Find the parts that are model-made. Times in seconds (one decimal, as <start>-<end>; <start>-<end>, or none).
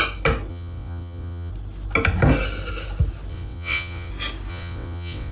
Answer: 0.5-1.5; 3.3-4.1; 4.5-5.3